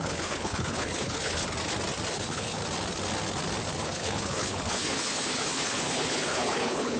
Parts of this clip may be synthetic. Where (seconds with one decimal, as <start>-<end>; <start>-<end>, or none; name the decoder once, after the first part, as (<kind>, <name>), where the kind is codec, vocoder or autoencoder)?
0.0-1.4 (codec, HILCodec); 2.1-2.6; 3.8-7.0